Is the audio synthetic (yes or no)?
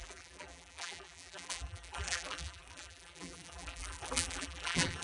yes